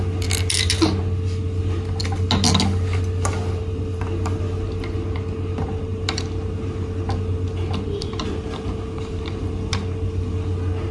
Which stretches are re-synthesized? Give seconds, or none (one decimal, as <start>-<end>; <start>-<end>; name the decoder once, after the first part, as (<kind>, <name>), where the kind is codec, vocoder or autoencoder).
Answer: none